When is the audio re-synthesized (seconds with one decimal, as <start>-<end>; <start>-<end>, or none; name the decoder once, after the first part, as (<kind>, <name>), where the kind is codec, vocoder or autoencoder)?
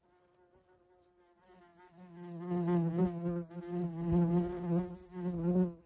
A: none